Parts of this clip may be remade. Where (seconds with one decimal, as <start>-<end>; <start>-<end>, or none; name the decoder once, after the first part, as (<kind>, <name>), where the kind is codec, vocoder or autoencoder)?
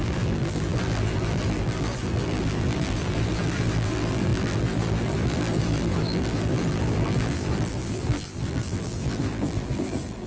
0.0-10.3 (vocoder, BigVGAN v2)